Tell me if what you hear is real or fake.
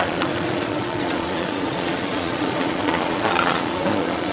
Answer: fake